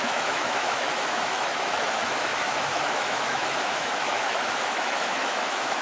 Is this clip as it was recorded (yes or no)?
no